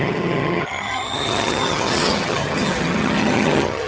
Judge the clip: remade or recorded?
remade